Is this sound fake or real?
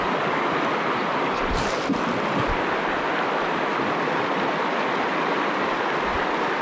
fake